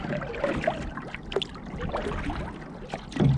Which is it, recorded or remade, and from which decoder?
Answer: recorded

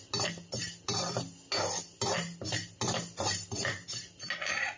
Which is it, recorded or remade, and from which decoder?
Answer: recorded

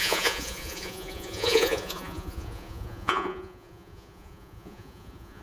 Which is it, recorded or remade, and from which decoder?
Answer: remade, vocoder, Vocos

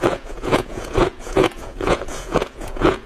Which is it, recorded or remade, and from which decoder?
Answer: remade, vocoder, Vocos